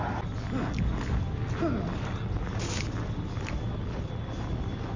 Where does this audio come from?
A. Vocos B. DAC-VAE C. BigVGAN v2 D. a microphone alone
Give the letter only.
D